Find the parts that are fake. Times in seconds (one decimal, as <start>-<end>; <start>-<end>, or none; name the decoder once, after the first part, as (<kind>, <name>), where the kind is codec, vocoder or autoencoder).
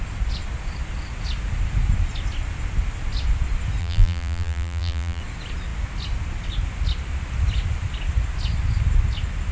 3.8-5.2 (vocoder, BigVGAN v2)